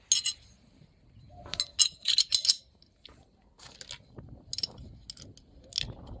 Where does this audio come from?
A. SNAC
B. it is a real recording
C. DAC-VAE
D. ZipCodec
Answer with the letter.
B